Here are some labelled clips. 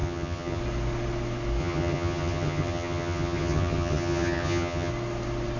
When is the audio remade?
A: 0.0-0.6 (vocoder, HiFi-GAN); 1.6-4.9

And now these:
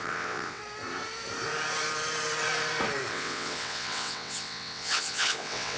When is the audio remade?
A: 0.0-0.6 (vocoder, WaveNeXt); 3.1-5.8

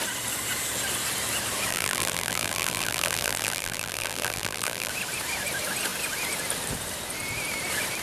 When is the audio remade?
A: 1.7-4.9 (vocoder, BigVGAN v2)

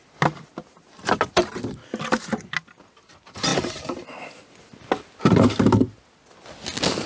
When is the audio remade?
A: none

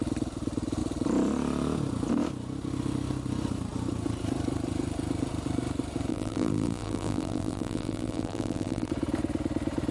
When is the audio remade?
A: 6.1-8.9 (vocoder, BigVGAN v2)

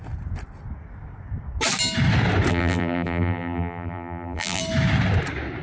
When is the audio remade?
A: 2.5-4.6 (vocoder, BigVGAN v2)